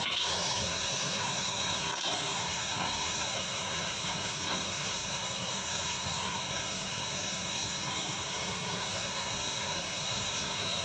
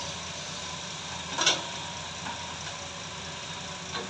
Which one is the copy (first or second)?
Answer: first